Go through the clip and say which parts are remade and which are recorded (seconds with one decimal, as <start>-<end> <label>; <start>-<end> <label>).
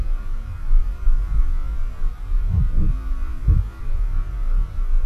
0.0-0.8 remade; 0.8-2.1 recorded; 2.1-2.9 remade; 2.9-3.8 recorded; 3.8-5.1 remade